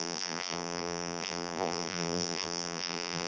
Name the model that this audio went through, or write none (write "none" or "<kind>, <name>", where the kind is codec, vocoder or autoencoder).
vocoder, BigVGAN v2